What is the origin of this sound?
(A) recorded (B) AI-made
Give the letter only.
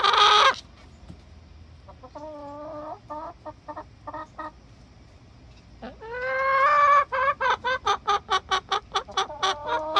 A